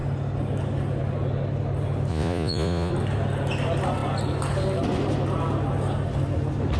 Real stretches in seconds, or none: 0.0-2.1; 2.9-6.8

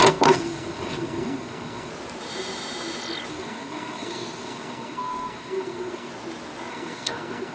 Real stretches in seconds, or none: 1.9-3.3; 6.1-6.7

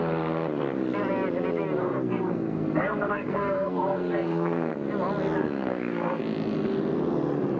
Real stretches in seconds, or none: 0.0-1.8; 4.7-5.4; 6.2-7.6